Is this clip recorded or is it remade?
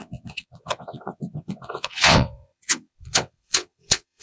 remade